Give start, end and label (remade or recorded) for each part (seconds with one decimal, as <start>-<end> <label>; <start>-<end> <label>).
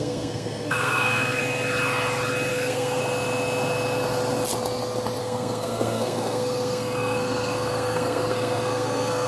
0.0-1.4 remade; 1.4-2.5 recorded; 2.5-3.0 remade; 3.0-5.2 recorded; 5.2-9.3 remade